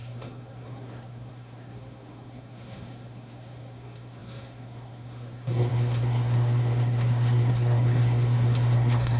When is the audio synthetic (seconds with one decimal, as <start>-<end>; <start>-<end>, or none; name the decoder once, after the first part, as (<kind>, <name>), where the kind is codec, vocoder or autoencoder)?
0.0-9.2 (codec, SNAC)